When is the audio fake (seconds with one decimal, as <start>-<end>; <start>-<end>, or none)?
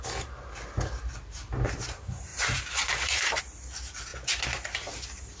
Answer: 2.3-3.4